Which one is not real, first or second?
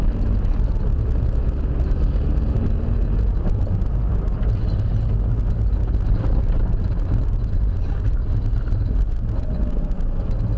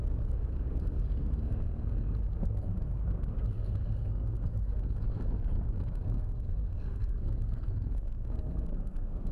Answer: second